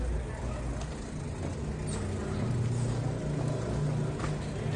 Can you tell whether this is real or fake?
real